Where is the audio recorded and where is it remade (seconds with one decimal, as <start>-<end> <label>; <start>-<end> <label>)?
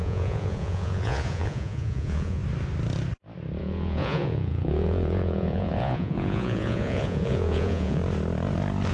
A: 0.0-2.4 remade; 2.4-3.6 recorded; 3.6-8.0 remade; 8.0-8.9 recorded